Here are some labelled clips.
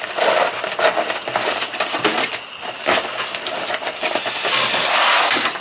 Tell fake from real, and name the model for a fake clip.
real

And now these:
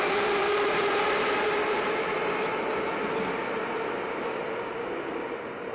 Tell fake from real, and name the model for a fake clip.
real